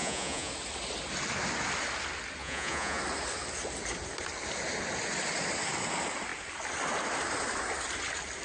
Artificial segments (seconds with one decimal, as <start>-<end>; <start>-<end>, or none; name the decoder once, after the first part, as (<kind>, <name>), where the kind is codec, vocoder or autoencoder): 0.0-0.5 (vocoder, Vocos); 2.4-3.0